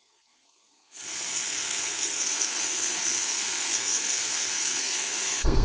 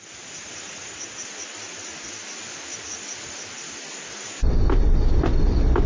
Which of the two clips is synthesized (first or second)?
first